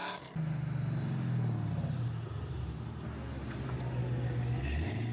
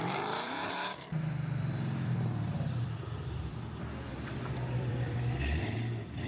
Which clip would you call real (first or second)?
first